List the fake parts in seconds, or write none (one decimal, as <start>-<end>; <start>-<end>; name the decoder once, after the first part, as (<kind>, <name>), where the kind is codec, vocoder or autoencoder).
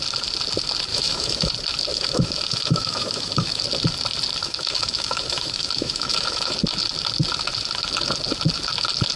0.9-1.5 (autoencoder, DAC-VAE); 1.9-3.6; 4.4-6.5